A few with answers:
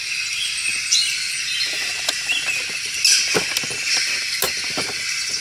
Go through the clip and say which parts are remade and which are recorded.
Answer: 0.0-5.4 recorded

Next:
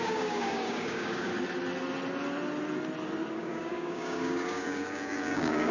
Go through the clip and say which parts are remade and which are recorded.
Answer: 0.0-1.3 remade; 1.3-3.3 recorded; 3.3-5.7 remade

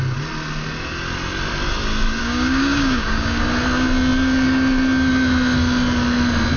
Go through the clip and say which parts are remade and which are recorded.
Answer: 0.0-2.2 recorded; 2.2-3.4 remade; 3.4-6.6 recorded

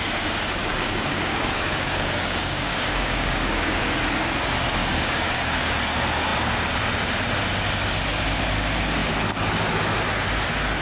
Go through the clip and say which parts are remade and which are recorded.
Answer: 0.0-0.6 recorded; 0.6-3.8 remade; 3.8-4.8 recorded; 4.8-5.7 remade; 5.7-10.8 recorded

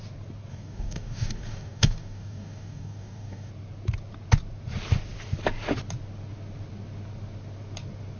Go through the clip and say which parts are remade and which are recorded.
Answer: 0.0-0.5 recorded; 0.5-3.5 remade; 3.5-8.2 recorded